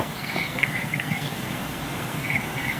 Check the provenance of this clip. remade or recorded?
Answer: remade